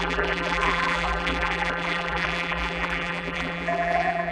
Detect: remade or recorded remade